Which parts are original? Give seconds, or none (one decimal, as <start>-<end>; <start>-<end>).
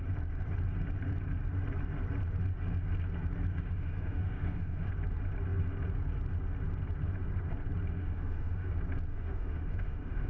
0.0-3.5; 4.9-8.0; 8.7-9.1